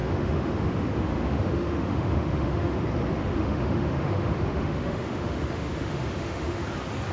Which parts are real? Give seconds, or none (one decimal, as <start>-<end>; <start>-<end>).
2.8-3.2; 6.6-7.1

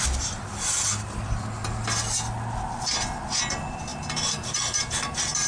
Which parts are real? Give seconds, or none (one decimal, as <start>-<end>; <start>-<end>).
1.6-2.8

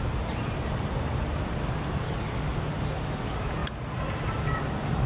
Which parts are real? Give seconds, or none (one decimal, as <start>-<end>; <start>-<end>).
0.0-5.1

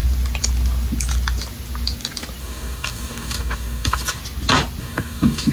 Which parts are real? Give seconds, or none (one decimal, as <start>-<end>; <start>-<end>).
0.0-2.4; 4.2-4.8

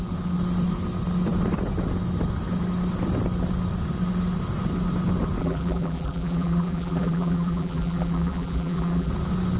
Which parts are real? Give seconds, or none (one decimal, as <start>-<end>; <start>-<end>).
0.0-5.4; 9.1-9.6

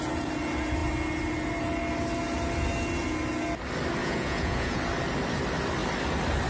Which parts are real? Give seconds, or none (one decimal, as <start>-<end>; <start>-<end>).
0.0-4.0; 4.8-6.5

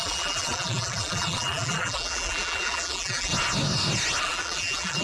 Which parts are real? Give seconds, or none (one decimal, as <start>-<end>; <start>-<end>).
3.3-4.2

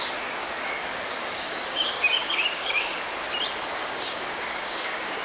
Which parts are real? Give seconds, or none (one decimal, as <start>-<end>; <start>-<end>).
0.0-0.4; 3.0-3.8